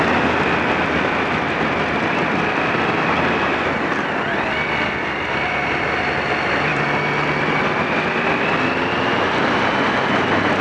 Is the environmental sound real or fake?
real